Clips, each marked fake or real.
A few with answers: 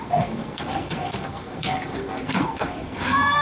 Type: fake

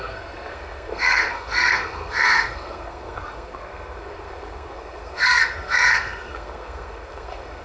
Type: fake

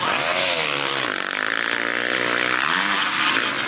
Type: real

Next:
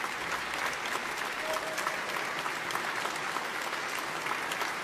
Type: real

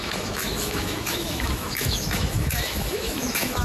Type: fake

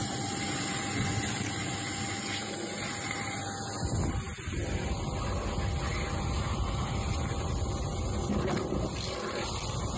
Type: real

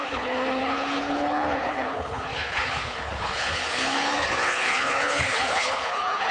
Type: fake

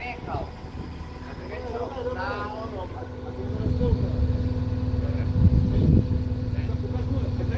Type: real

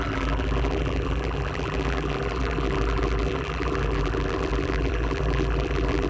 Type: fake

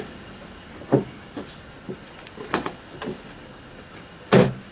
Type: real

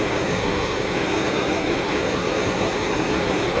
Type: fake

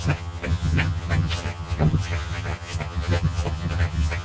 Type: fake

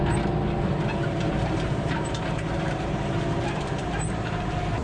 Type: fake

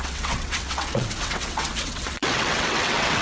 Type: fake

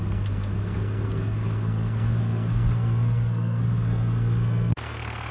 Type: fake